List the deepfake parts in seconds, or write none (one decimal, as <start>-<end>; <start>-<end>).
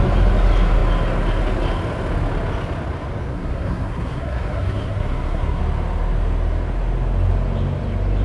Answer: 3.3-5.6